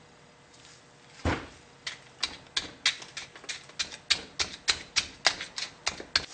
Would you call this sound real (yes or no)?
yes